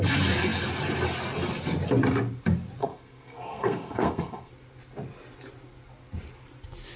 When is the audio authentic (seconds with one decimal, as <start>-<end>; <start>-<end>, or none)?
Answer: 0.0-2.8; 4.5-7.0